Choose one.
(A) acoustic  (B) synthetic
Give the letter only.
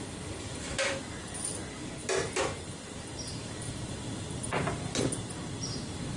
A